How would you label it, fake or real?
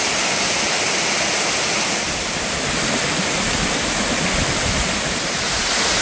real